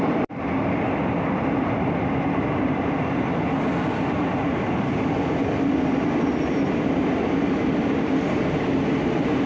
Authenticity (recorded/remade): recorded